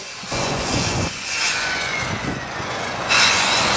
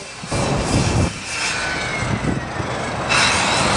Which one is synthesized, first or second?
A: first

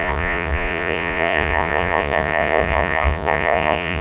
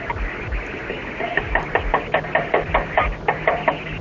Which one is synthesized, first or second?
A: first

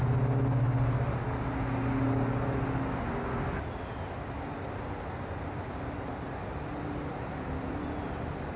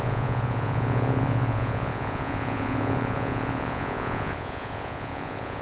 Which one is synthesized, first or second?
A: second